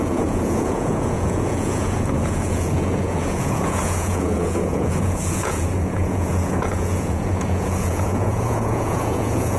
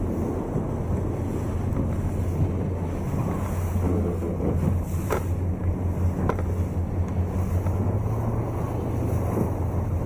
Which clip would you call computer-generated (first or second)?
first